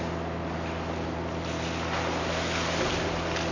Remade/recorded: recorded